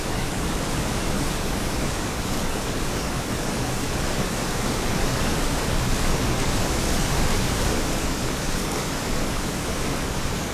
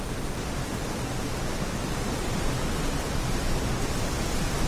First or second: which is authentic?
second